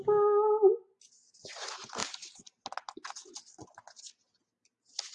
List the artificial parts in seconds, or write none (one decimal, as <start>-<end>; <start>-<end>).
none